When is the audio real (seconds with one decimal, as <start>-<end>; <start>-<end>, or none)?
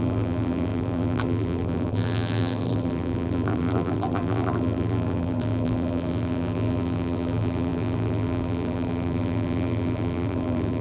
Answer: none